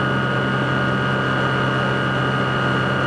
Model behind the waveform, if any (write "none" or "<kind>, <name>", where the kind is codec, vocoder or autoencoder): none